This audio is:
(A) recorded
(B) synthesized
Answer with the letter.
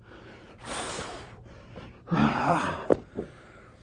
B